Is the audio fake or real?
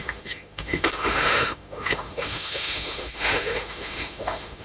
fake